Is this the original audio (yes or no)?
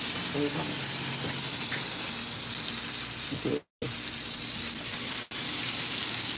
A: yes